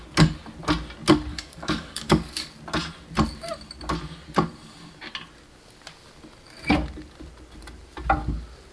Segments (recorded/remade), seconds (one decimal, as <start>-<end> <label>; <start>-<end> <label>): 0.0-1.3 recorded; 1.3-2.5 remade; 2.5-8.7 recorded